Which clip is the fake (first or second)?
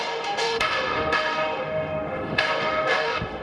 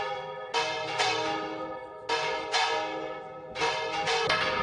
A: first